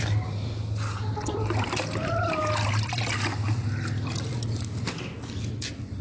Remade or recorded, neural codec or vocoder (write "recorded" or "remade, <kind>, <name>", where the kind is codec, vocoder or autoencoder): recorded